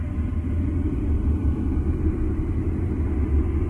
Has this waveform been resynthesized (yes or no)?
no